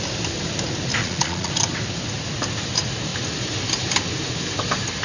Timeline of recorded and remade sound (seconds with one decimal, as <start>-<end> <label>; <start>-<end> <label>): 0.0-1.0 recorded; 1.0-1.5 remade; 1.5-5.0 recorded